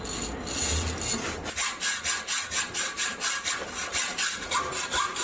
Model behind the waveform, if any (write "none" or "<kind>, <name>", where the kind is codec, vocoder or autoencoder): none